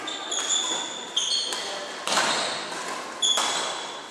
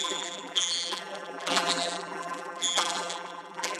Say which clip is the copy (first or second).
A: second